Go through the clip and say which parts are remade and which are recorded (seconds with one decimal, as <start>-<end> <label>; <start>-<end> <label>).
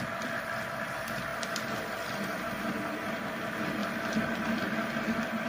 0.0-5.5 recorded